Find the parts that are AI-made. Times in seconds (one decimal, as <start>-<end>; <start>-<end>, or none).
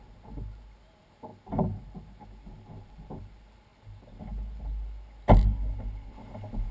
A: none